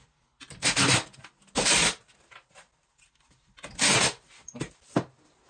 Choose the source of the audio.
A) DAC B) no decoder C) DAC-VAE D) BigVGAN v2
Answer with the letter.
B